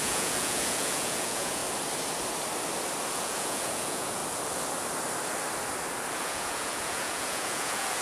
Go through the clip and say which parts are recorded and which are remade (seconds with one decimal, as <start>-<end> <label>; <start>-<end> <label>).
0.0-1.6 remade; 1.6-3.1 recorded; 3.1-4.2 remade; 4.2-6.1 recorded; 6.1-8.0 remade